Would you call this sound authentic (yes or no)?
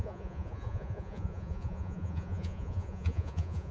no